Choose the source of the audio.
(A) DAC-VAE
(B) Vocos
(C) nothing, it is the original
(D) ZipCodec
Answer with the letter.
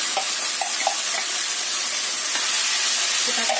C